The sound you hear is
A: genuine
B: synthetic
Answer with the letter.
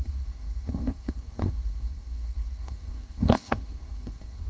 B